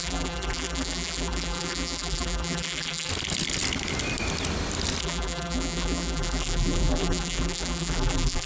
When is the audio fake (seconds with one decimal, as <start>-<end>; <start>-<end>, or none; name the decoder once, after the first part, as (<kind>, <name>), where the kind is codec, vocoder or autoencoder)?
0.0-3.1 (vocoder, BigVGAN v2); 5.0-8.5